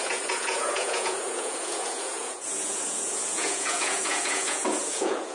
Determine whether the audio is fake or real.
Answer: fake